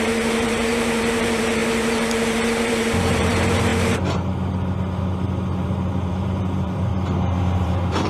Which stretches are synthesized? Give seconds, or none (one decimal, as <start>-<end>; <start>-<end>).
0.0-3.7; 6.1-6.9; 7.4-8.1